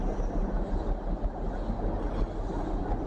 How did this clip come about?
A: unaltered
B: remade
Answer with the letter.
A